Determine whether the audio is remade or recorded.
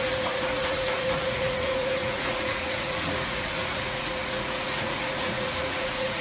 remade